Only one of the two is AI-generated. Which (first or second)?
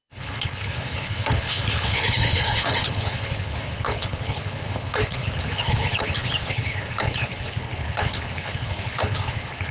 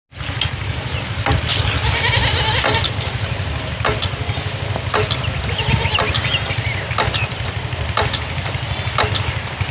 first